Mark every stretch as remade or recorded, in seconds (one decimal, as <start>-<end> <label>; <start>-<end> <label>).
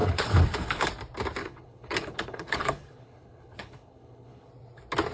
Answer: 0.0-0.9 remade; 0.9-1.4 recorded; 1.4-4.5 remade; 4.5-5.1 recorded